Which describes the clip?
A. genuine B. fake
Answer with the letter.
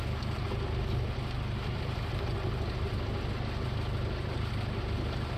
A